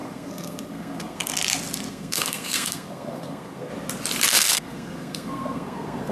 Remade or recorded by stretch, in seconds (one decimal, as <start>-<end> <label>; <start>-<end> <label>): 0.0-1.3 remade; 1.3-1.9 recorded; 1.9-3.7 remade; 3.7-4.3 recorded; 4.3-6.1 remade